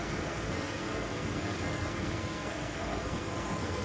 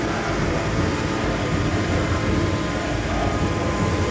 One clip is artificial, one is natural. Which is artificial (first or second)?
first